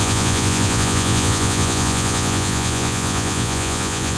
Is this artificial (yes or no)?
yes